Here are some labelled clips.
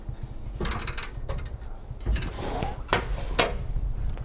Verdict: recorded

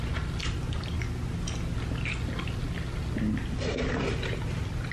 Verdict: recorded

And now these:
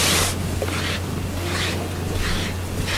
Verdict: recorded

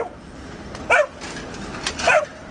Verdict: remade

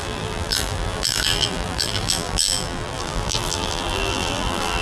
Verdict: remade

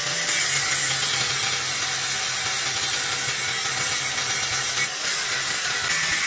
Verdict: recorded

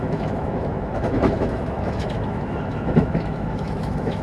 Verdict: remade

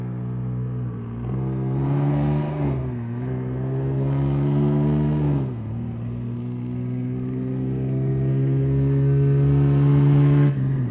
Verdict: remade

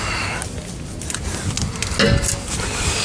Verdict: recorded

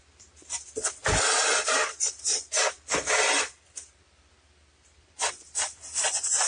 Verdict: remade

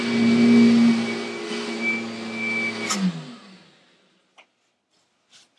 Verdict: recorded